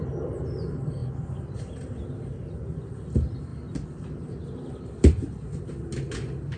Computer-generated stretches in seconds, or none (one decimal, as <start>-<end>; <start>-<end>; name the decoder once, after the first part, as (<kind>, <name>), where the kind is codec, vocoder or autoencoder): none